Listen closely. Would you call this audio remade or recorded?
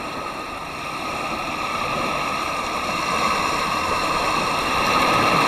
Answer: remade